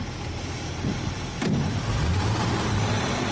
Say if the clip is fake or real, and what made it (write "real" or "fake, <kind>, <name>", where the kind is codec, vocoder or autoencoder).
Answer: real